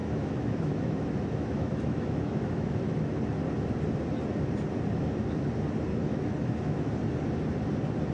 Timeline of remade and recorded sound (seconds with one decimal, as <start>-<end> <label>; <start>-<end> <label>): 0.0-3.2 remade; 3.2-5.9 recorded; 5.9-6.9 remade; 6.9-8.1 recorded

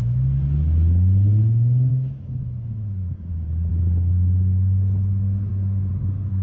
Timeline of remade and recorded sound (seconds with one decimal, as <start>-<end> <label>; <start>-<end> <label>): 0.0-1.9 recorded; 1.9-3.3 remade; 3.3-6.4 recorded

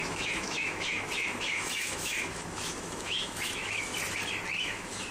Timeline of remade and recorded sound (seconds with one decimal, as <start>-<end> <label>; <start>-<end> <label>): 0.0-3.9 remade; 3.9-4.6 recorded; 4.6-5.1 remade

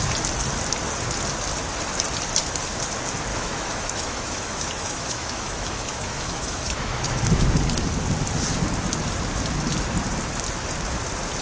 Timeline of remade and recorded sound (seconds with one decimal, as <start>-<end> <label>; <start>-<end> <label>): 0.0-3.3 recorded; 3.3-7.2 remade; 7.2-11.4 recorded

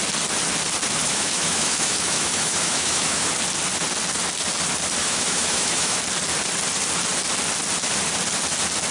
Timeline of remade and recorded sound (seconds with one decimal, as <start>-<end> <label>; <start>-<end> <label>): 0.0-1.0 recorded; 1.0-3.3 remade; 3.3-5.0 recorded; 5.0-6.0 remade; 6.0-8.9 recorded

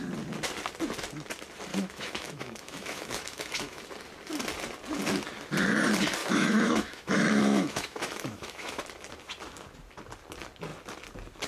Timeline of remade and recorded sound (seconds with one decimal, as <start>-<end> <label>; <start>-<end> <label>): 0.0-1.7 recorded; 1.7-3.8 remade; 3.8-6.2 recorded; 6.2-8.8 remade; 8.8-11.5 recorded

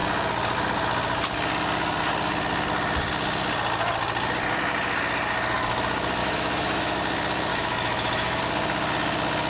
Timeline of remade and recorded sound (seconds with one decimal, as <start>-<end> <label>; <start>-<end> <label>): 0.0-6.2 recorded; 6.2-7.0 remade; 7.0-7.5 recorded; 7.5-8.4 remade; 8.4-9.5 recorded